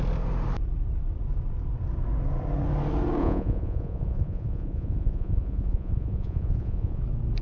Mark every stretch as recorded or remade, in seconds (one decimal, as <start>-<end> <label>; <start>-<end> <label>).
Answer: 0.0-3.2 recorded; 3.2-7.0 remade; 7.0-7.4 recorded